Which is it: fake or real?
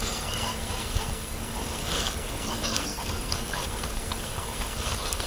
fake